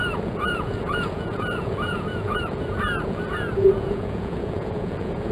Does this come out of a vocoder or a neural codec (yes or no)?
yes